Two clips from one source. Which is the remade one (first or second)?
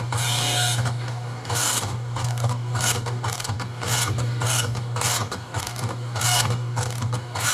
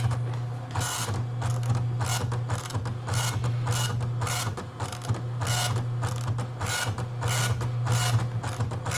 first